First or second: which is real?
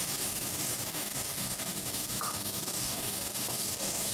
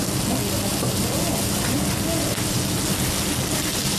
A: second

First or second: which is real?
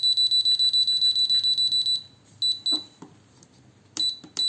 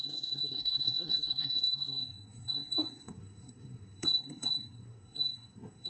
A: first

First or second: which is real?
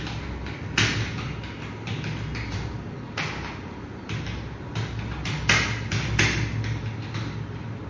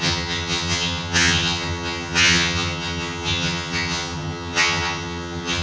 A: first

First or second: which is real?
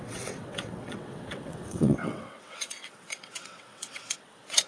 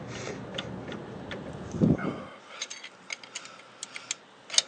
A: second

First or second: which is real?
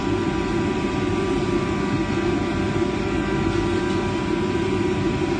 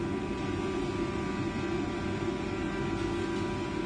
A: second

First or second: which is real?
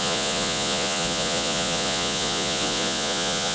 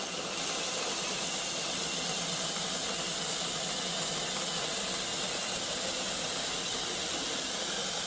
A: second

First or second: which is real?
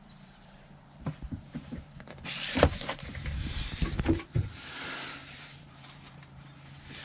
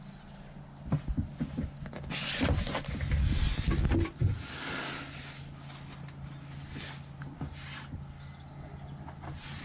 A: second